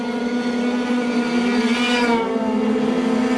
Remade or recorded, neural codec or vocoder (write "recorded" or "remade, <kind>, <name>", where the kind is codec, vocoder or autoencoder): recorded